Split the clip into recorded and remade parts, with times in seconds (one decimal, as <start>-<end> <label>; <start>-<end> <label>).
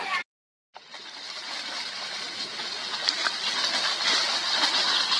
0.0-5.2 recorded